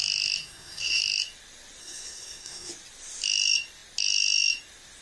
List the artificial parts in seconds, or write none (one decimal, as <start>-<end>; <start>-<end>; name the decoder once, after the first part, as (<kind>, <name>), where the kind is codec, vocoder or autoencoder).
0.4-1.0 (codec, SNAC); 1.8-2.7

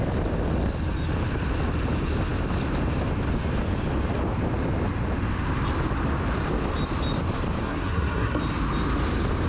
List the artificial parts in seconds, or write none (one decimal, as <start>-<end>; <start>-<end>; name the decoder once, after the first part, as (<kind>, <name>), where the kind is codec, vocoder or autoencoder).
7.6-8.4 (codec, SNAC)

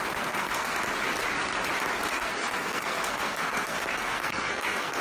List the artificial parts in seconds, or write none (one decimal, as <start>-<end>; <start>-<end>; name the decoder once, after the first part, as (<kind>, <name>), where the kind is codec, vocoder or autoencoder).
0.0-0.8 (codec, SNAC); 2.1-5.0

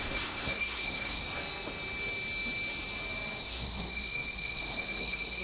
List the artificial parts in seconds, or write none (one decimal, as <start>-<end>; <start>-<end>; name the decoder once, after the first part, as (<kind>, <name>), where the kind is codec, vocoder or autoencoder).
0.0-1.2 (codec, SNAC); 3.4-5.4

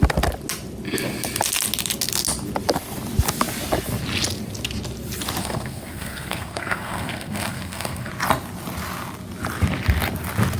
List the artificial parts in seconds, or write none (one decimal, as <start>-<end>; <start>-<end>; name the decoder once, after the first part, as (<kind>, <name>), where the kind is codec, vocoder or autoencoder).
5.4-8.1 (codec, SNAC)